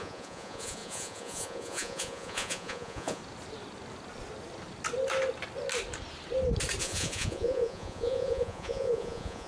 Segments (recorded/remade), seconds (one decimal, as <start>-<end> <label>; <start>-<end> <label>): 0.0-3.2 remade; 3.2-6.8 recorded; 6.8-9.5 remade